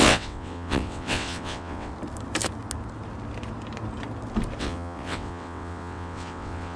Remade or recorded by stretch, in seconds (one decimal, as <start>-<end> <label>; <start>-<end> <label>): 0.0-1.9 remade; 1.9-4.6 recorded; 4.6-6.8 remade